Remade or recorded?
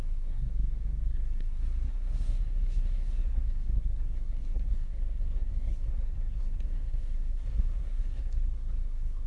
remade